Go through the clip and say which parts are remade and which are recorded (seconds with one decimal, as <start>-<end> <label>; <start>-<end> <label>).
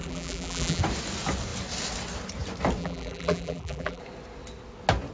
0.0-0.8 remade; 0.8-2.8 recorded; 2.8-4.0 remade; 4.0-5.1 recorded